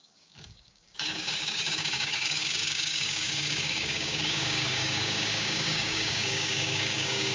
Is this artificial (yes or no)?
yes